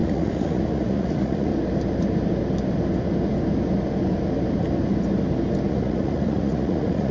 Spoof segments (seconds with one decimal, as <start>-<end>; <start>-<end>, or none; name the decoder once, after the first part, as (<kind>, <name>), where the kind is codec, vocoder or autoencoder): 0.0-1.5 (vocoder, Vocos); 5.7-7.1